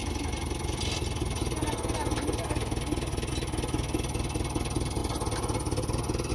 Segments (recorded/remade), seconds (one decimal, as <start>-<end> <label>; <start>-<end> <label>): 0.0-6.3 recorded